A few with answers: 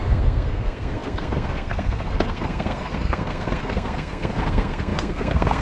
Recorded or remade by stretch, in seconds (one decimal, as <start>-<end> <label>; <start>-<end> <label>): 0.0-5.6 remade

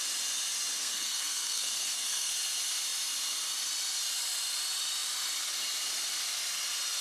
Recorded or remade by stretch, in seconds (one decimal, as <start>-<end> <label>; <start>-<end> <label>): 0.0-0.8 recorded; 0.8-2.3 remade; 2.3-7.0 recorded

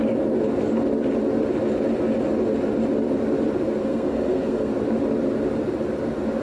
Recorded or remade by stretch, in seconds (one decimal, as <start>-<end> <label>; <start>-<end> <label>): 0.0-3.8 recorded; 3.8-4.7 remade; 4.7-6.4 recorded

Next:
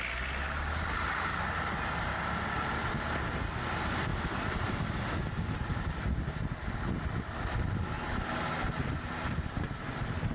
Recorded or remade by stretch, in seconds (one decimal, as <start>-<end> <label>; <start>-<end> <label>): 0.0-10.3 recorded